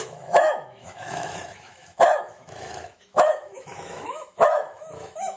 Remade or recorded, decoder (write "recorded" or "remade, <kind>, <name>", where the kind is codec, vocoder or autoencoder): remade, autoencoder, DAC-VAE